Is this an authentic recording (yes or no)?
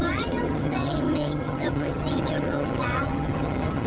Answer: no